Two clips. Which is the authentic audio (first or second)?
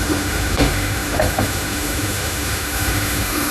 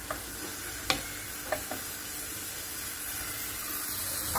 second